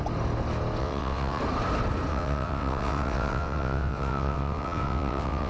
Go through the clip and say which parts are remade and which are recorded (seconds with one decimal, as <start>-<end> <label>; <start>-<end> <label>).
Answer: 0.0-0.8 recorded; 0.8-1.4 remade; 1.4-2.1 recorded; 2.1-5.5 remade